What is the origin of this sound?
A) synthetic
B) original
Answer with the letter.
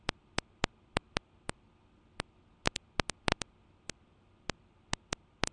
B